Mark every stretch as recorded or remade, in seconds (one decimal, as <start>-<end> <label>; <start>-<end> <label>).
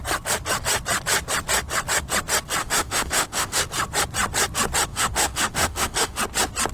0.0-2.6 recorded; 2.6-3.6 remade; 3.6-4.9 recorded; 4.9-6.2 remade; 6.2-6.7 recorded